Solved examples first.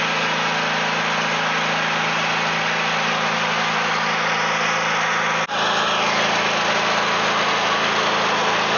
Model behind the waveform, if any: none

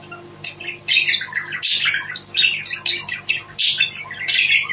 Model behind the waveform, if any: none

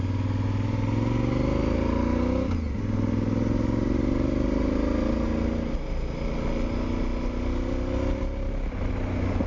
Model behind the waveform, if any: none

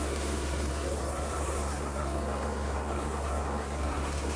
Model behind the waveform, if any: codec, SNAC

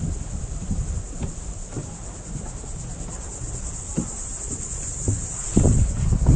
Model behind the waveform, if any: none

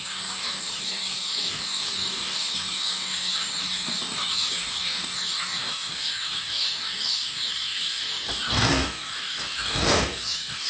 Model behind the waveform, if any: codec, DAC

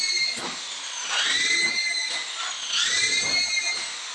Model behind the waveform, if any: none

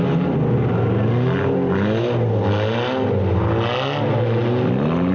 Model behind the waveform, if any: none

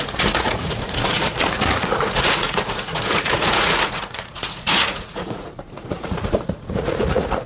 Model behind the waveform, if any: vocoder, Vocos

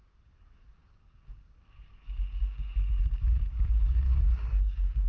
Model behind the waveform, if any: codec, DAC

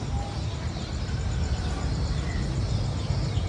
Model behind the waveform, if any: none